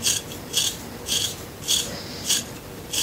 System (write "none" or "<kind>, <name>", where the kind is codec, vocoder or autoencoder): none